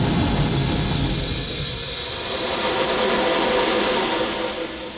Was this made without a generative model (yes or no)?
yes